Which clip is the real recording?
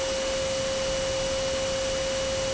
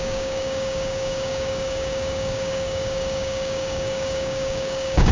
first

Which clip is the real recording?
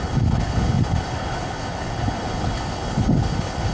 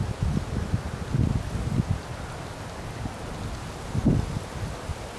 second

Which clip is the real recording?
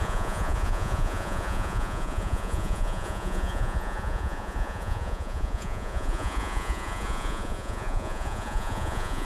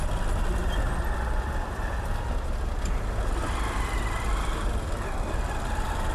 second